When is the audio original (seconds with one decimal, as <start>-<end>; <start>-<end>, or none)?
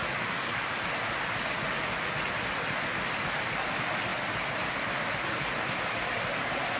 0.8-6.8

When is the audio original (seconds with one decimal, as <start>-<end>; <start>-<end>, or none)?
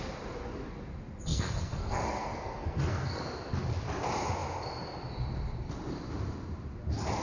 0.0-1.3; 3.2-7.2